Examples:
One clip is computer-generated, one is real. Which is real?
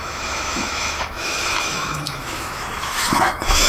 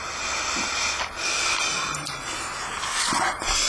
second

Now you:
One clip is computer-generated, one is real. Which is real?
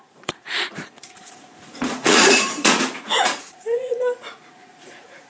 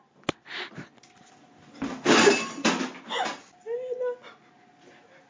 second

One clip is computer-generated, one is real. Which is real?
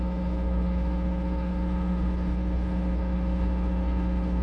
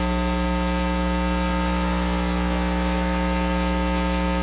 second